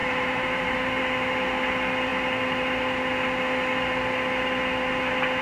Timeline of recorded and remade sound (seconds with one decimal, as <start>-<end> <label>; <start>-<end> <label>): 0.0-1.0 remade; 1.0-5.4 recorded